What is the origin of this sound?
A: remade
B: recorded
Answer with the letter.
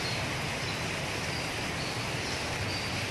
B